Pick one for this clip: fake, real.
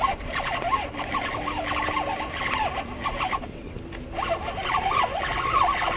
real